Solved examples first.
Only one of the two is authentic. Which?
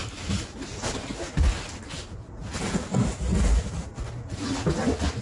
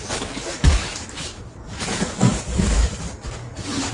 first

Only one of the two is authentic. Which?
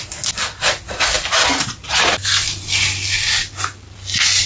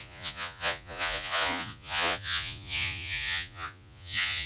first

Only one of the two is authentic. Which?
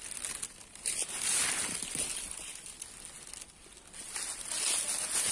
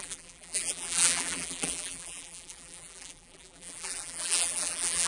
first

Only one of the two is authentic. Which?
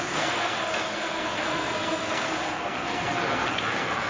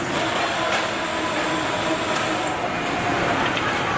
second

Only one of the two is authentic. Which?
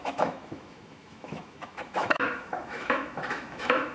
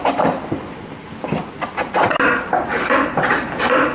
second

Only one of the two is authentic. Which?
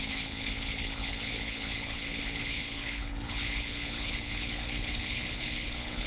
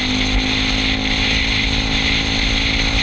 second